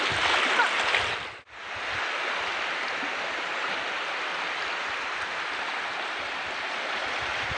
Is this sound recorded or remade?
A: recorded